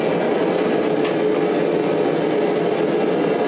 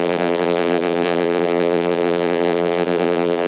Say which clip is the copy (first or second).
second